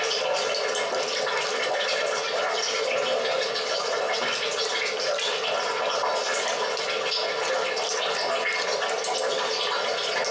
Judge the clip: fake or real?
real